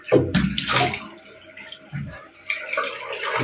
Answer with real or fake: real